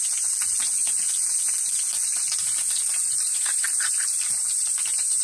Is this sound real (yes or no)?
yes